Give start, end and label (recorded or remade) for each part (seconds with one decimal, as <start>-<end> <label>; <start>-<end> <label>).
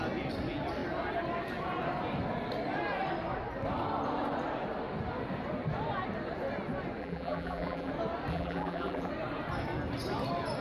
0.0-7.0 recorded; 7.0-7.9 remade; 7.9-8.3 recorded; 8.3-9.1 remade; 9.1-10.6 recorded